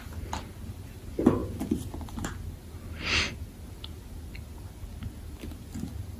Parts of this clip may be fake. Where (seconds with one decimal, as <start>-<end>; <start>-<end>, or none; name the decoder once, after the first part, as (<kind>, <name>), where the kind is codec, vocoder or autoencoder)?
none

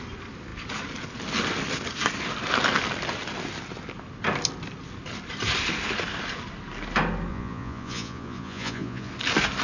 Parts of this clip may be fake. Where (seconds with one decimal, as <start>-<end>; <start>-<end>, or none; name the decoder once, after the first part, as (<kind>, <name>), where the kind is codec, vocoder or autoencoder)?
7.3-9.1 (vocoder, Vocos)

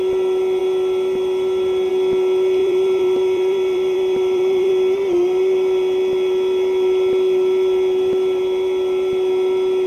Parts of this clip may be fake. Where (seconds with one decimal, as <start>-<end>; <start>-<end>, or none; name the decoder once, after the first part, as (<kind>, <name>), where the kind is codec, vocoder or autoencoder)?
2.6-4.7 (vocoder, BigVGAN v2)